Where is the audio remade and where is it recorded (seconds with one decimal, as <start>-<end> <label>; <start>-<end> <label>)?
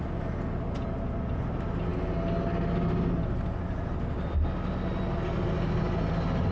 0.0-6.5 recorded